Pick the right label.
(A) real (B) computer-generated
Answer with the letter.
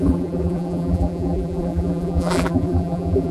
B